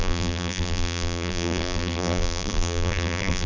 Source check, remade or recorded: remade